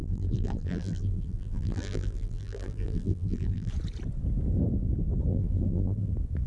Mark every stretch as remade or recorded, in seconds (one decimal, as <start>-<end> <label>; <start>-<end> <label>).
0.0-3.7 remade; 3.7-5.3 recorded; 5.3-6.1 remade; 6.1-6.5 recorded